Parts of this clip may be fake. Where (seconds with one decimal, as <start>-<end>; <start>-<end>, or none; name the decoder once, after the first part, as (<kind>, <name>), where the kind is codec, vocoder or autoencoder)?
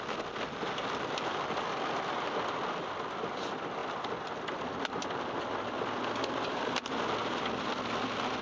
none